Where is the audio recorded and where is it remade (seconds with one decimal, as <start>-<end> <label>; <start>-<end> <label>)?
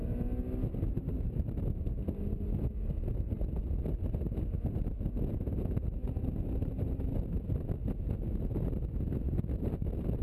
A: 0.0-7.8 recorded; 7.8-8.4 remade; 8.4-10.2 recorded